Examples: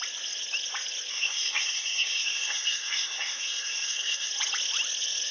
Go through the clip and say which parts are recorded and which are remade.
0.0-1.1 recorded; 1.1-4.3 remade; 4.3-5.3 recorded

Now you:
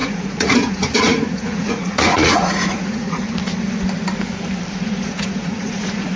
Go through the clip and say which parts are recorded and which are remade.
0.0-3.2 remade; 3.2-4.7 recorded; 4.7-6.2 remade

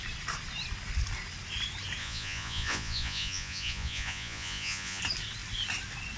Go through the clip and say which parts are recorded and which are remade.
0.0-2.0 recorded; 2.0-5.0 remade; 5.0-6.2 recorded

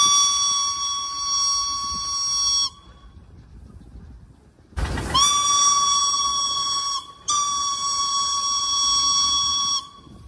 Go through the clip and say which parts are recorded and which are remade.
0.0-10.3 recorded

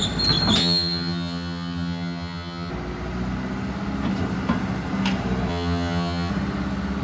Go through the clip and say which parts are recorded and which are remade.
0.0-0.6 recorded; 0.6-2.7 remade; 2.7-5.5 recorded; 5.5-6.3 remade; 6.3-7.0 recorded

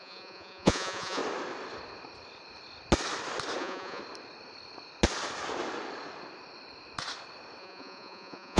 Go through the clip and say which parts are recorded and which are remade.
0.0-1.2 remade; 1.2-3.6 recorded; 3.6-4.0 remade; 4.0-7.6 recorded; 7.6-8.6 remade

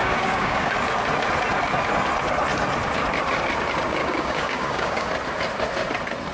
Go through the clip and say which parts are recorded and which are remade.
0.0-0.7 remade; 0.7-4.0 recorded; 4.0-5.1 remade; 5.1-6.3 recorded